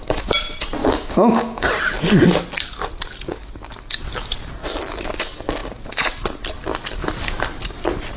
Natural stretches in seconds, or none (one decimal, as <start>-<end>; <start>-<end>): 0.0-0.8; 1.7-8.2